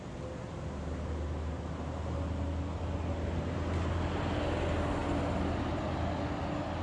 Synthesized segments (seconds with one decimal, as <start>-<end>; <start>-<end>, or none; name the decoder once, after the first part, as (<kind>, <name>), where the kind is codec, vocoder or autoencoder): none